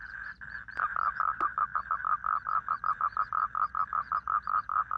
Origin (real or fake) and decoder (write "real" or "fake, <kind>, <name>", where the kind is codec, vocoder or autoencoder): fake, vocoder, BigVGAN v2